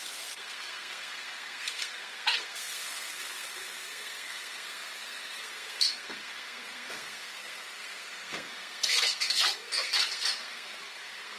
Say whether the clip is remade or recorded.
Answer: remade